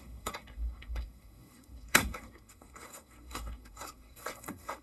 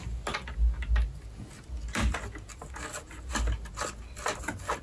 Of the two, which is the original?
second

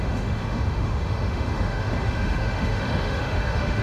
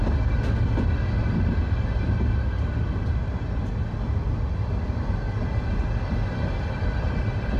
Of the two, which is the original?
second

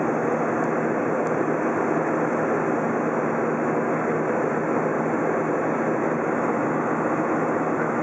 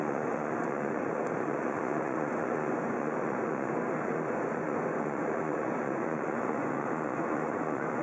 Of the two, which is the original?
first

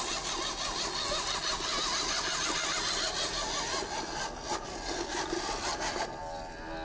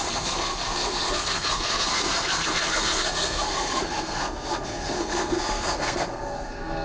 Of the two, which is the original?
first